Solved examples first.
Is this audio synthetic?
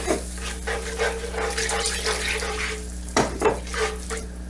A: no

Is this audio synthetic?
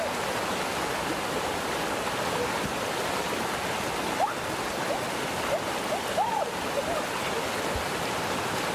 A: no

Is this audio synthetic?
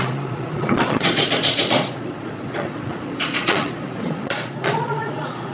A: yes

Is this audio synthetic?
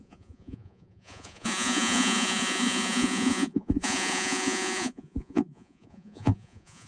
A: yes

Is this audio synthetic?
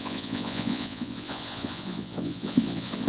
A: yes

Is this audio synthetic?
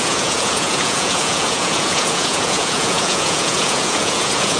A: yes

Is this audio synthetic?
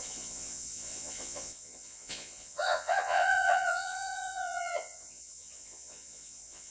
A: yes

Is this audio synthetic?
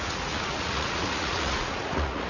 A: yes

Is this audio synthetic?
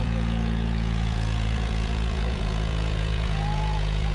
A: yes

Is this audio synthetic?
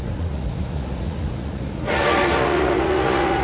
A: yes